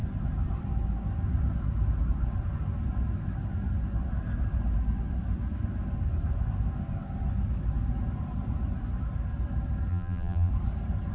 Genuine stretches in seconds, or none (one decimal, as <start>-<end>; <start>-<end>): 0.0-9.9; 10.5-11.1